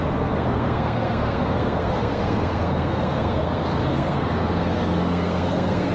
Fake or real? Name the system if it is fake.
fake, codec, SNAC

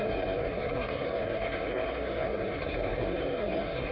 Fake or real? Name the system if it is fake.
fake, codec, SNAC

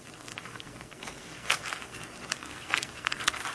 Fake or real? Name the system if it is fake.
fake, codec, SNAC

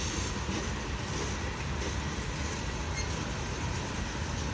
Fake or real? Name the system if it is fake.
real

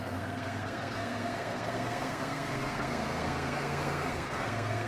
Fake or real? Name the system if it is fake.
fake, codec, SNAC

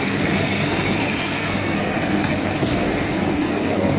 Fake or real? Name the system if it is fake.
fake, codec, SNAC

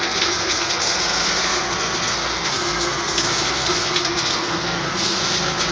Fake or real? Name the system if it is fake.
fake, codec, SNAC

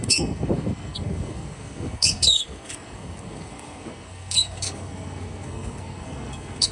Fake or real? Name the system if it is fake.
fake, codec, SNAC